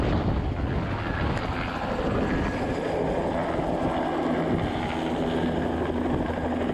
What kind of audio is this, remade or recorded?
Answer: recorded